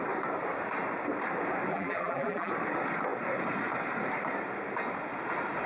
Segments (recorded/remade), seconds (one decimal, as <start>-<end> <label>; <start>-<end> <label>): 0.0-1.7 recorded; 1.7-2.5 remade; 2.5-5.7 recorded